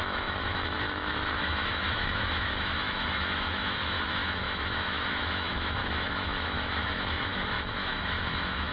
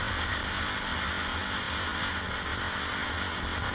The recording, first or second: second